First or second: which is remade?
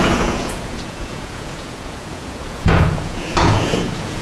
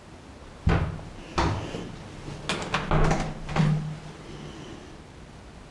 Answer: first